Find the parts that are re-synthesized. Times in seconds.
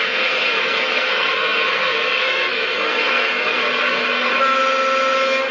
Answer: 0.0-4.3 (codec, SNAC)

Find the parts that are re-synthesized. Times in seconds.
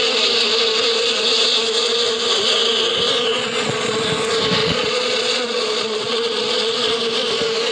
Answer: 3.3-4.0 (vocoder, Vocos); 4.6-6.9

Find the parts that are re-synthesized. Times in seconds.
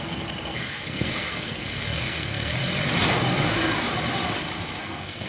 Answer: 0.0-2.6 (codec, SNAC); 4.8-5.3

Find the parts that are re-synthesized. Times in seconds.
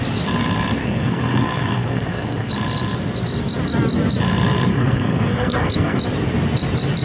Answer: 0.8-2.5 (codec, SNAC); 4.7-6.0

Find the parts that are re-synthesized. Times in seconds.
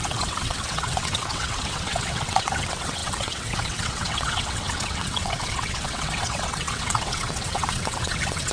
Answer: 0.0-8.5 (vocoder, WaveNeXt)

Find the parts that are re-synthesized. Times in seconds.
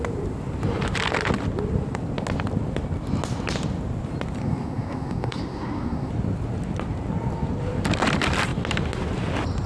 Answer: 4.4-6.1 (codec, SNAC)